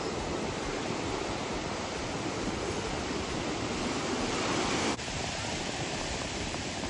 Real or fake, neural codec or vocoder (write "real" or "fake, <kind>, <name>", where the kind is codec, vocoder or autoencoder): fake, vocoder, BigVGAN v2